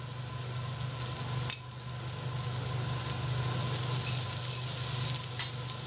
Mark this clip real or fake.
real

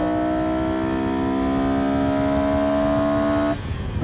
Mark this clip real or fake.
real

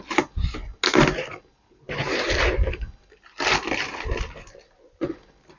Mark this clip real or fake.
real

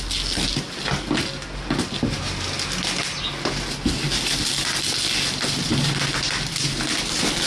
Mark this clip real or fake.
real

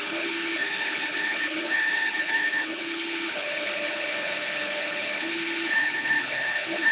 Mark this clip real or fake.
fake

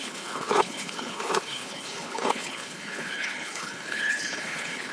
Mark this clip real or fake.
fake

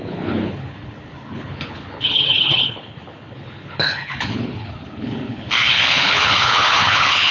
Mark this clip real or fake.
fake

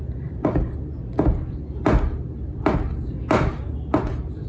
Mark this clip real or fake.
real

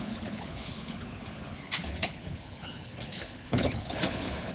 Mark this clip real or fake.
fake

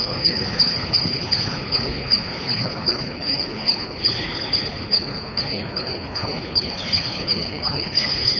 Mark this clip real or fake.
fake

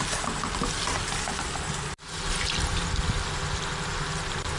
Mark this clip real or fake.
real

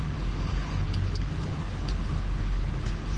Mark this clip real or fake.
fake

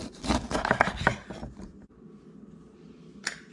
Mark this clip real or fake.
real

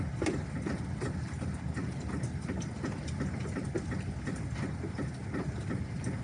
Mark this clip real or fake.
real